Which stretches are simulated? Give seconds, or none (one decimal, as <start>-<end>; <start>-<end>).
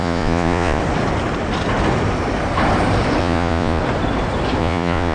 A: 0.0-0.8; 3.2-3.8; 4.6-5.1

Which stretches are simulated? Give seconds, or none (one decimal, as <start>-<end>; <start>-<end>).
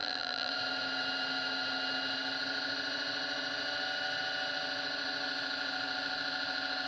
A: 0.0-0.5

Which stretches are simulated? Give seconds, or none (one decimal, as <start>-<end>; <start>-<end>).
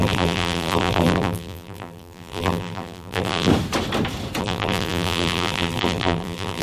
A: 0.0-3.5; 4.4-6.6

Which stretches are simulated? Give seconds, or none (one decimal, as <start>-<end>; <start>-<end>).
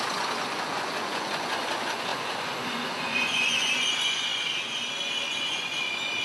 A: 0.0-6.2